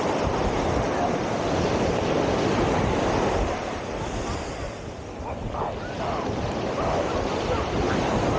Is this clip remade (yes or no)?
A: no